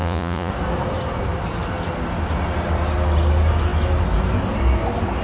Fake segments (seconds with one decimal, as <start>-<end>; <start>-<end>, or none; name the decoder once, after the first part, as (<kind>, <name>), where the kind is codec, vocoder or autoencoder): 0.0-0.5 (vocoder, Vocos)